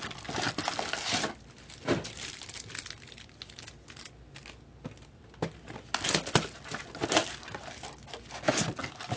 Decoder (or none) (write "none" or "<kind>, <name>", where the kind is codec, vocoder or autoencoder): none